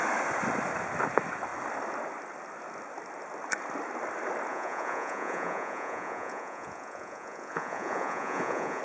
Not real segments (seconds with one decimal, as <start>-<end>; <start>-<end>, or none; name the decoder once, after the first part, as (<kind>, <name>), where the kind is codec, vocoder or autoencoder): 4.5-8.8 (vocoder, Vocos)